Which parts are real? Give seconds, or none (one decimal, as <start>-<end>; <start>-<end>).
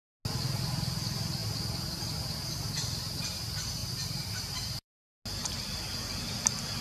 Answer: 0.0-3.8; 5.0-6.8